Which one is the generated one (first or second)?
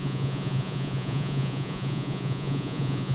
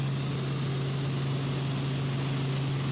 first